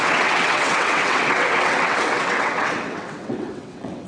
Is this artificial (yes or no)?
yes